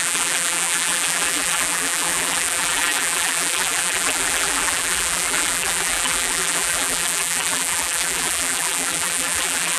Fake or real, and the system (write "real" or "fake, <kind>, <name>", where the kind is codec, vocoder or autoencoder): fake, vocoder, BigVGAN v2